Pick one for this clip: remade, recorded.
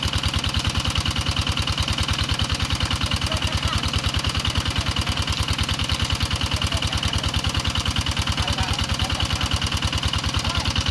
recorded